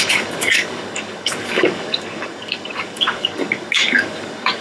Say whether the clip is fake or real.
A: fake